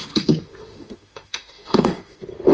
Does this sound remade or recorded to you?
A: remade